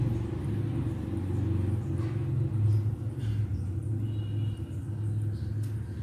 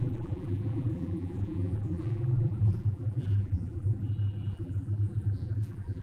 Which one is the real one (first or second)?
first